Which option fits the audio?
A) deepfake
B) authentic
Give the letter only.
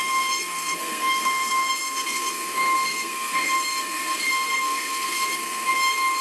A